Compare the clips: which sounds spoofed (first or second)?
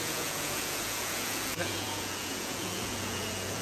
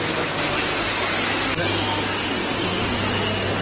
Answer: first